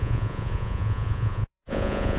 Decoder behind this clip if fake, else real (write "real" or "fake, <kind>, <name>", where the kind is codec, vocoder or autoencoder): fake, vocoder, Vocos